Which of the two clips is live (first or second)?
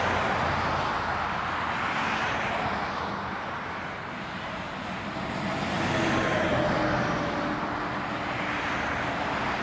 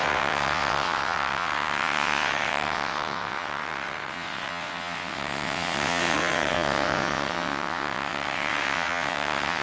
first